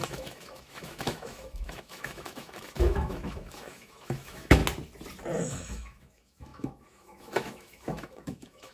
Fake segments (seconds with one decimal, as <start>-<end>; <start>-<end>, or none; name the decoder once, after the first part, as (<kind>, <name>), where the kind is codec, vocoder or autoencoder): 0.0-4.6 (autoencoder, DAC-VAE); 5.5-8.7